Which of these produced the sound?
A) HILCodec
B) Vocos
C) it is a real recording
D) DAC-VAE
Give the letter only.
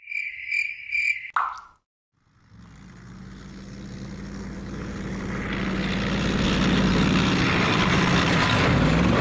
C